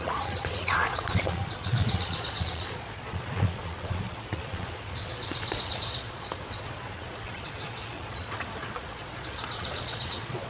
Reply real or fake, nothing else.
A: fake